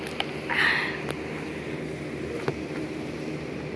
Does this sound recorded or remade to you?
recorded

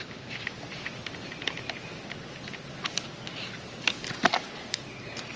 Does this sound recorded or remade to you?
recorded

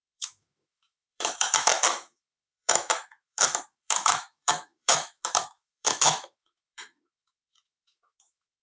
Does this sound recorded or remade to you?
remade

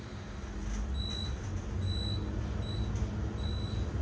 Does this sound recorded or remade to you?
recorded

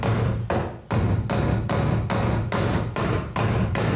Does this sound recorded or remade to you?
recorded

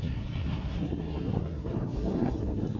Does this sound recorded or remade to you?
remade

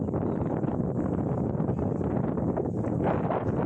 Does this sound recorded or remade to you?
recorded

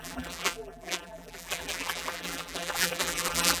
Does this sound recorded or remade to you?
remade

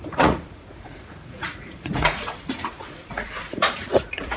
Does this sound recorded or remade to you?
remade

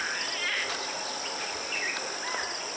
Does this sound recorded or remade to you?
recorded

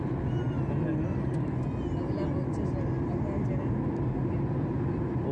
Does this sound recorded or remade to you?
recorded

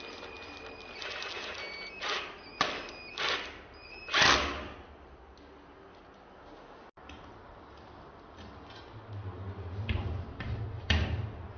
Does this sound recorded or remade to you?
recorded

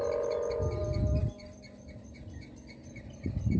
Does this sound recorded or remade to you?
recorded